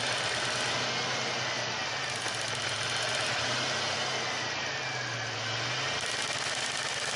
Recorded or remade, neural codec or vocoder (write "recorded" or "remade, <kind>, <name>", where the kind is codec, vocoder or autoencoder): recorded